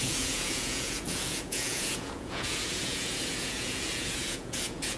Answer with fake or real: fake